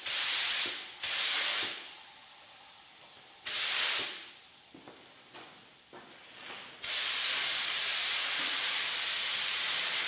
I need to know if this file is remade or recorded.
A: recorded